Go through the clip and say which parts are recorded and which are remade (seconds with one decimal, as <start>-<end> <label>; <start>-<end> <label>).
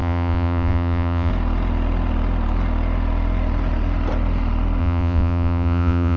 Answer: 0.0-1.3 remade; 1.3-4.8 recorded; 4.8-6.2 remade